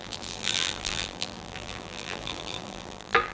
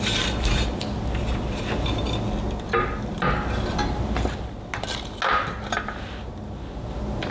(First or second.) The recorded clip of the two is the second